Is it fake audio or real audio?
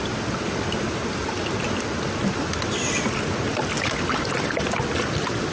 real